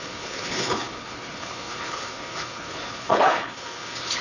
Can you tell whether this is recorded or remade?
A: remade